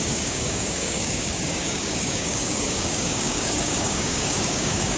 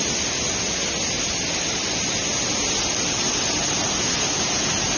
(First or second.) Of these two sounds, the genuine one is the second